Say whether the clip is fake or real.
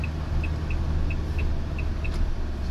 real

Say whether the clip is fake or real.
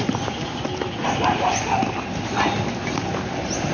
real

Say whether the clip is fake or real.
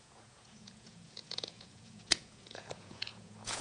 fake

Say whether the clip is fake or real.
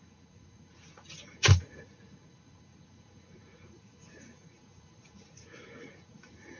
fake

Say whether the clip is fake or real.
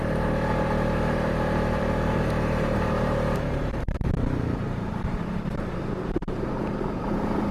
fake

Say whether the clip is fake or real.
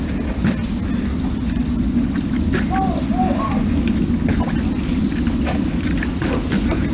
real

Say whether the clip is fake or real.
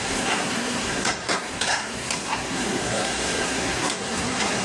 fake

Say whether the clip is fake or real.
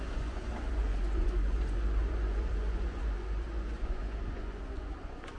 fake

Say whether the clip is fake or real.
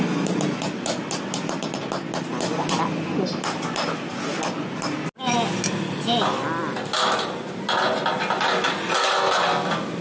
real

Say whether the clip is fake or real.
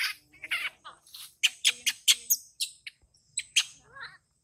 real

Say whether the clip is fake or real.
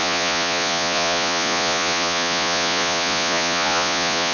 fake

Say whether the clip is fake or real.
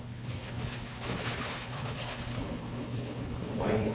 fake